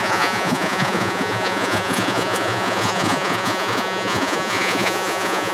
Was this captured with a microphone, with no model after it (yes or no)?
no